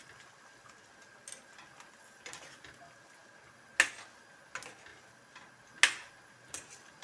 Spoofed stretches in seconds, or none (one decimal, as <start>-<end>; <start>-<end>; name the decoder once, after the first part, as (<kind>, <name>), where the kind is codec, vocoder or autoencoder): none